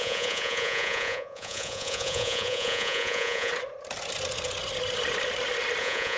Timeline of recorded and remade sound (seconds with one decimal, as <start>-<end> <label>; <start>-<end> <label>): 0.0-3.5 remade; 3.5-5.8 recorded; 5.8-6.2 remade